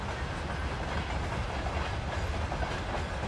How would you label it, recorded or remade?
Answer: recorded